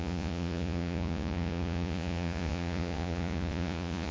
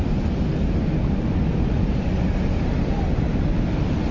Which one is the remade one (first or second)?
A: first